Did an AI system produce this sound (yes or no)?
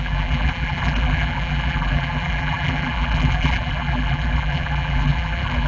yes